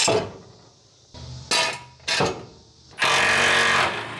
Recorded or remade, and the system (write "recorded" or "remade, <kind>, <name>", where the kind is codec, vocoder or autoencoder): recorded